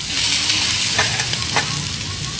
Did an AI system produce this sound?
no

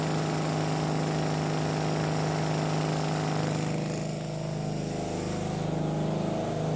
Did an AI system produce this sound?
no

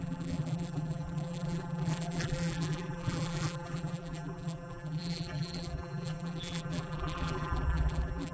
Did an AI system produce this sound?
yes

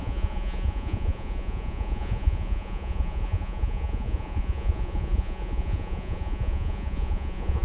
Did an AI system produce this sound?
yes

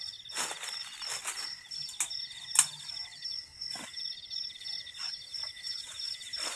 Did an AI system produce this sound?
no